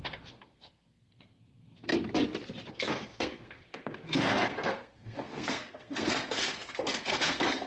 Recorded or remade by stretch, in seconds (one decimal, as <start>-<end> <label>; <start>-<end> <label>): 0.0-1.9 remade; 1.9-2.7 recorded; 2.7-7.7 remade